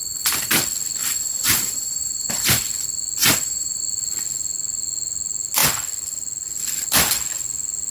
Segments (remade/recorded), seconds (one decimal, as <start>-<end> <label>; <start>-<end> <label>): 0.0-1.0 recorded; 1.0-2.6 remade; 2.6-3.2 recorded; 3.2-3.8 remade; 3.8-7.9 recorded